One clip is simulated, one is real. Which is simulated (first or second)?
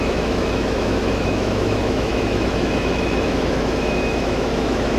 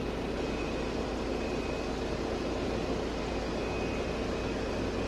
first